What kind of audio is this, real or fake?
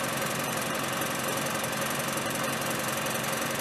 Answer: fake